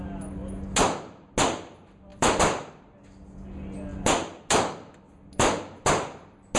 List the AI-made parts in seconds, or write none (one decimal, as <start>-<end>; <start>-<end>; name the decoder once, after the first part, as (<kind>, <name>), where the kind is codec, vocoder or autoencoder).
2.1-2.7 (vocoder, BigVGAN v2); 3.9-4.4